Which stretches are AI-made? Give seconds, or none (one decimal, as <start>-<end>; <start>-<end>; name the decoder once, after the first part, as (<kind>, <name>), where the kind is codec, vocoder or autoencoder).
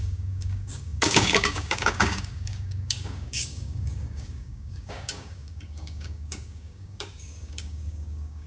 0.0-8.5 (codec, DAC)